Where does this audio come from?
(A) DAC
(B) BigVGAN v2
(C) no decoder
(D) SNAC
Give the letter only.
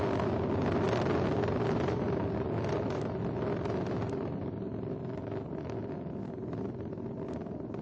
C